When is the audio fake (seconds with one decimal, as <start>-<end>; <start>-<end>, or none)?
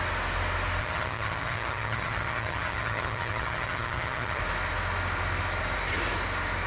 0.8-4.4